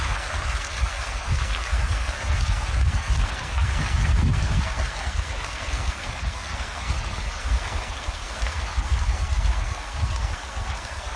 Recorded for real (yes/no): no